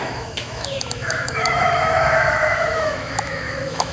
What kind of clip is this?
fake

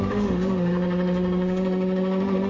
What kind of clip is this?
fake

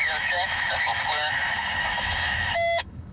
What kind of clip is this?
fake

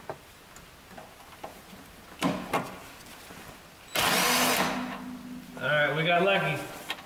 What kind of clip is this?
real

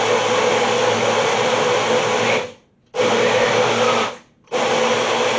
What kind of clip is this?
real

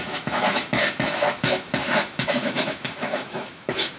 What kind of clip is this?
fake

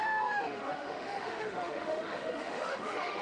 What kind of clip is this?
fake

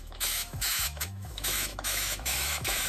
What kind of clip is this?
fake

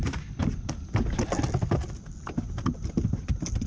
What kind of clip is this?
real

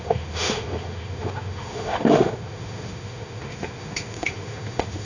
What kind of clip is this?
fake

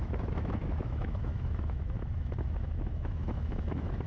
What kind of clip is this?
fake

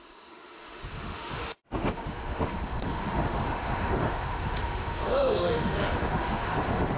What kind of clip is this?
fake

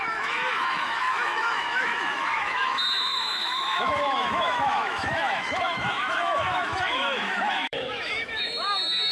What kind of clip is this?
fake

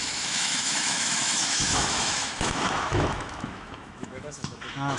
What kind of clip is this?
fake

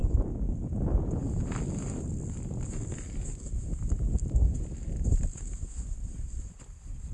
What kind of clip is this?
real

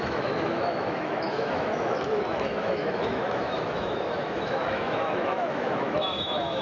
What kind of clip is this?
fake